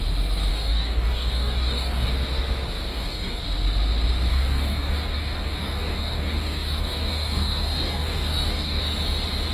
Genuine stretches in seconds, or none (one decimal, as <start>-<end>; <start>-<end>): 0.0-0.5; 2.1-2.9; 3.4-4.3; 8.8-9.5